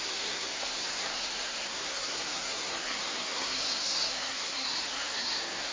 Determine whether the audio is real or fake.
fake